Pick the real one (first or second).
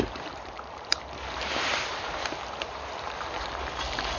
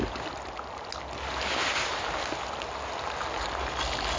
second